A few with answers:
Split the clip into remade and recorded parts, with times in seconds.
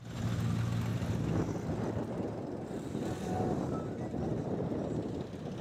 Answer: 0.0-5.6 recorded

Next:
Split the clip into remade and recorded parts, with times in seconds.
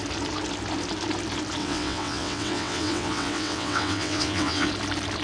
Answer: 0.0-1.6 recorded; 1.6-4.7 remade; 4.7-5.2 recorded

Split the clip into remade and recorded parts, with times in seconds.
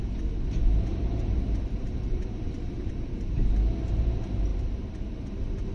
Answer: 0.0-0.9 recorded; 0.9-2.9 remade; 2.9-4.5 recorded; 4.5-5.3 remade; 5.3-5.7 recorded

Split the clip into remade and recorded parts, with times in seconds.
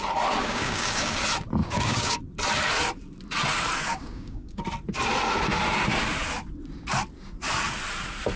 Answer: 0.0-0.4 recorded; 0.4-1.2 remade; 1.2-1.6 recorded; 1.6-2.2 remade; 2.2-3.9 recorded; 3.9-4.6 remade; 4.6-8.4 recorded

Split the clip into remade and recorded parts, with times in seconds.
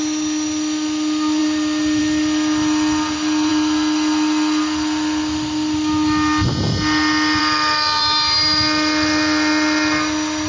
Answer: 0.0-10.5 recorded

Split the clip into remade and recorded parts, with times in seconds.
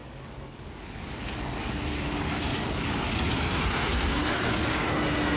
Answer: 0.0-3.2 remade; 3.2-4.2 recorded; 4.2-4.8 remade; 4.8-5.4 recorded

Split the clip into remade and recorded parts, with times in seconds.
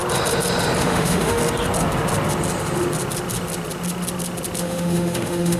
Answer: 0.0-0.8 recorded; 0.8-1.4 remade; 1.4-4.6 recorded; 4.6-5.6 remade